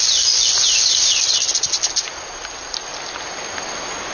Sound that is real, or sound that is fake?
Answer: real